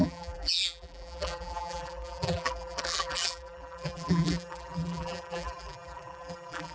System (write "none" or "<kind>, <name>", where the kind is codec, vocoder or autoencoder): vocoder, BigVGAN v2